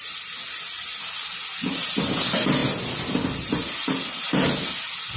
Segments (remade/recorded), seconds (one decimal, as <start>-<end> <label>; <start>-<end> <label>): 0.0-5.2 recorded